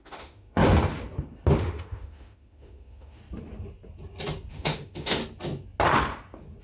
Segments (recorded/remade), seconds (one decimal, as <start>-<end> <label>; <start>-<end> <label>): 0.0-0.6 remade; 0.6-1.6 recorded; 1.6-3.2 remade; 3.2-4.5 recorded; 4.5-5.2 remade; 5.2-6.6 recorded